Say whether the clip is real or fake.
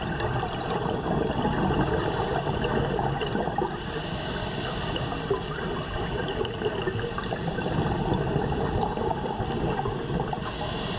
real